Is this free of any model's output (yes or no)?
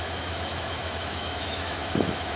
no